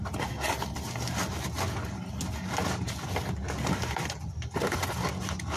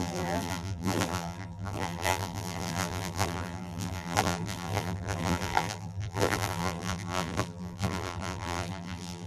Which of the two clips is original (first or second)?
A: first